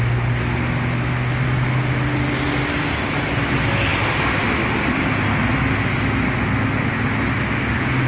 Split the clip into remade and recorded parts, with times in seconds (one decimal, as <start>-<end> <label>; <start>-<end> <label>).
0.0-8.1 recorded